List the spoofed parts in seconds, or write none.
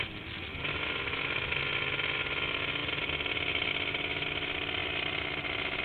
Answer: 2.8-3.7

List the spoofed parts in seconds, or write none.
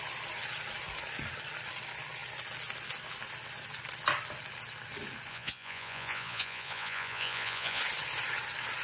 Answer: 5.3-7.8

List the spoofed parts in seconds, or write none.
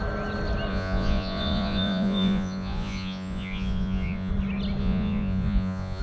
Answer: 0.7-4.3; 4.8-6.0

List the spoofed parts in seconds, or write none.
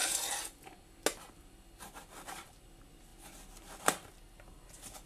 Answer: none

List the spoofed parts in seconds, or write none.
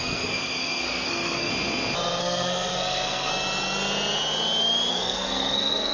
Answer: 0.0-1.5; 2.2-3.3; 4.9-5.9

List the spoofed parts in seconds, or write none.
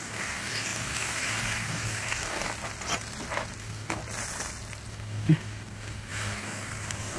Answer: 0.0-2.5; 3.6-4.0; 4.9-7.2